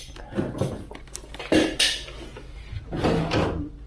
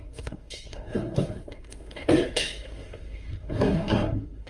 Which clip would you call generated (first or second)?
second